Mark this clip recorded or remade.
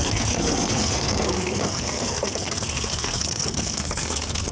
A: remade